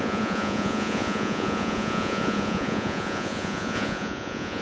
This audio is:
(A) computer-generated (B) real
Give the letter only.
A